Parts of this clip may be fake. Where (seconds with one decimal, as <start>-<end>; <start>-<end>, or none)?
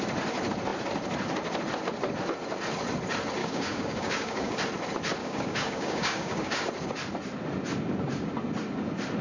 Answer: 3.4-4.6; 5.2-6.7